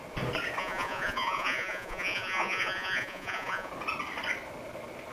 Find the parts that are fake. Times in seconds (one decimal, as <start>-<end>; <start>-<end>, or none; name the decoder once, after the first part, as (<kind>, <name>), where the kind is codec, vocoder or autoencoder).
0.6-3.7 (vocoder, Vocos)